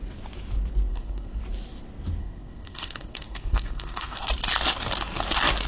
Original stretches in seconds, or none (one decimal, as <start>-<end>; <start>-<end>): 0.0-0.9; 1.4-2.2; 4.3-5.7